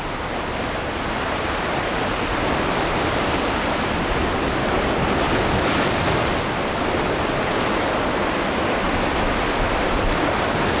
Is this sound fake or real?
real